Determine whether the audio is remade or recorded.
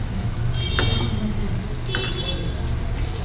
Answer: recorded